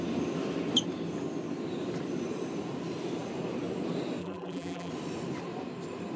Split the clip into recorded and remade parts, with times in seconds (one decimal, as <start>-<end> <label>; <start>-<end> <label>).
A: 0.0-4.2 recorded; 4.2-4.9 remade; 4.9-6.2 recorded